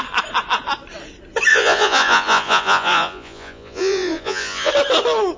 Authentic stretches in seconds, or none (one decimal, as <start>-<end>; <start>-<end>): 0.0-1.5; 4.7-5.4